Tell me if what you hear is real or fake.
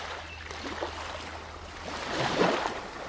real